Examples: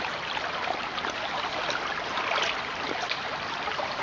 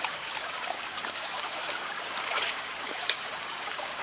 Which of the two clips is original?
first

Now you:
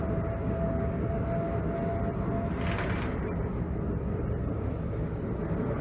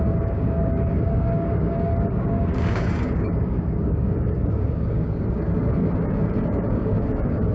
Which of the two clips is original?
first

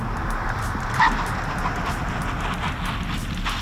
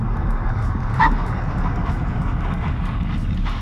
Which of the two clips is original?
first